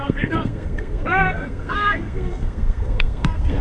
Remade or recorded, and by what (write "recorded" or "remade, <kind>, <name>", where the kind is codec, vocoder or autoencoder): remade, codec, SNAC